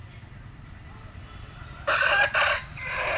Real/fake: fake